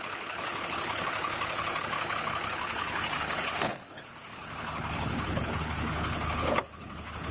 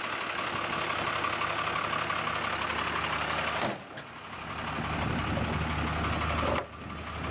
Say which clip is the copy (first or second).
first